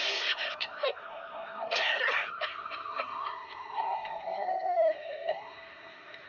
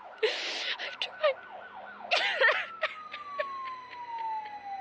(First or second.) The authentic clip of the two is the second